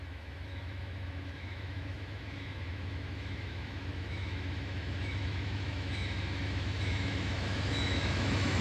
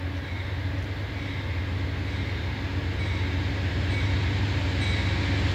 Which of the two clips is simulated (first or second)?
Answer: first